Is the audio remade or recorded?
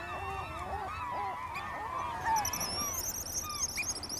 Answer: recorded